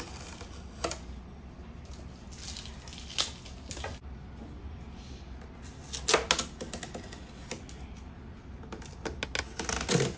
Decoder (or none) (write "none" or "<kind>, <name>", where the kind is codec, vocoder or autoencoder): none